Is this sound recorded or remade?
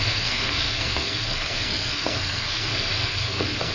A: remade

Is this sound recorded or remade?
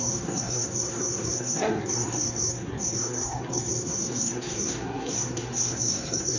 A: remade